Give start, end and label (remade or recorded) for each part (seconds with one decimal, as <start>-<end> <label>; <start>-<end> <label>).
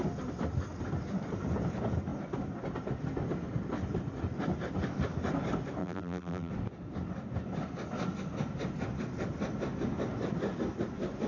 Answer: 0.0-5.8 recorded; 5.8-6.5 remade; 6.5-11.3 recorded